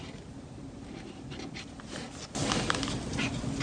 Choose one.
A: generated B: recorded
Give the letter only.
B